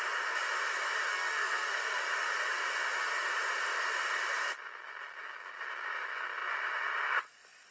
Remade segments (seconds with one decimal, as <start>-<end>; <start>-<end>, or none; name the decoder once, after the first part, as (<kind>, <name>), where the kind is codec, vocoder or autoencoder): 1.1-2.0 (codec, SNAC)